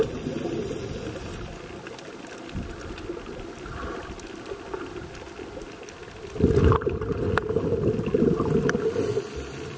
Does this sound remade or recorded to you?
recorded